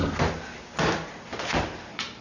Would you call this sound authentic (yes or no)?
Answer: yes